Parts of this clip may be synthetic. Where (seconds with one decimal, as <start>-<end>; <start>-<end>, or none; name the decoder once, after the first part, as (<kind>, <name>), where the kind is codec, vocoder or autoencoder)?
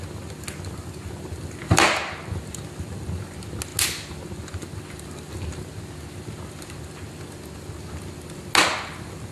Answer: none